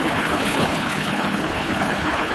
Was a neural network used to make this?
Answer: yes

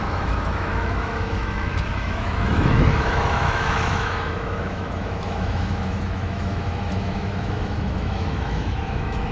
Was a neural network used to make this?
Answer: yes